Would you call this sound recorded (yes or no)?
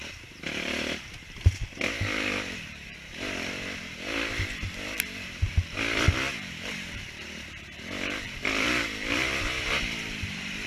no